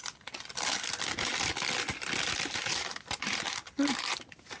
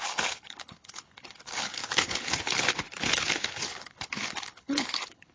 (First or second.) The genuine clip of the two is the first